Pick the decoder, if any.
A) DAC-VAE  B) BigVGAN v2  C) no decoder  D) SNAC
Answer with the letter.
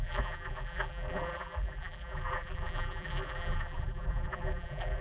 B